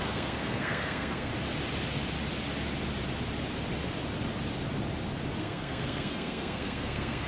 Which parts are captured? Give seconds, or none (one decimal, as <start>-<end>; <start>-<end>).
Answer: 1.3-5.4